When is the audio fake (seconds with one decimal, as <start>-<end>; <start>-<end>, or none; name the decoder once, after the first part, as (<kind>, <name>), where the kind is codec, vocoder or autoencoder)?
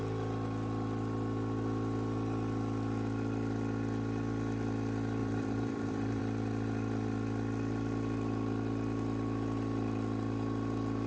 5.2-6.2 (vocoder, BigVGAN v2)